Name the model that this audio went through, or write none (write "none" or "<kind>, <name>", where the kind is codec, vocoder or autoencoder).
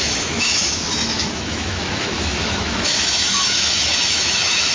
autoencoder, DAC-VAE